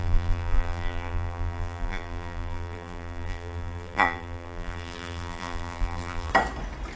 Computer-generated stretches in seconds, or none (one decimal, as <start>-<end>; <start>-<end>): 0.0-6.3